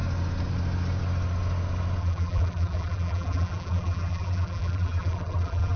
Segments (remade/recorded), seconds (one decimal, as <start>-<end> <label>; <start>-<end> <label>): 0.0-2.0 recorded; 2.0-5.8 remade